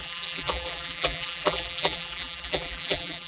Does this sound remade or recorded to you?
remade